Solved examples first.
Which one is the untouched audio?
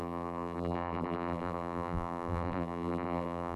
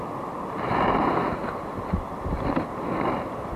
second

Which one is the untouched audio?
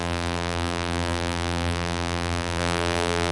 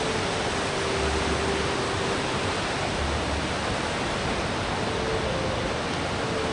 second